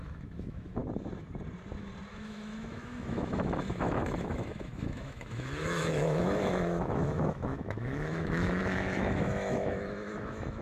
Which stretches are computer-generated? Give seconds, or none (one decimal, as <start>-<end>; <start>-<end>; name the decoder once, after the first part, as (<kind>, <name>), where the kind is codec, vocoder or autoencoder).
0.0-0.8 (autoencoder, DAC-VAE); 2.1-10.6